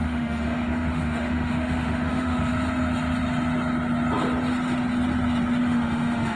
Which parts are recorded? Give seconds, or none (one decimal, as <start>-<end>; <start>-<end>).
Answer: 2.5-5.6